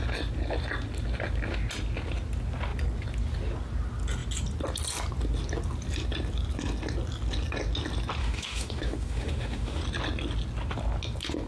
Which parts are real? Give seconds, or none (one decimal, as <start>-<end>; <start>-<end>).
0.0-8.2; 9.8-11.5